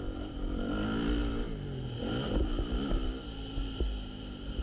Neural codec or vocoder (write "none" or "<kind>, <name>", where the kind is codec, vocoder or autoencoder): none